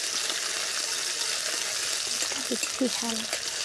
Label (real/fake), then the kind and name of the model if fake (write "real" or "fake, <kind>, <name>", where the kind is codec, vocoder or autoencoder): real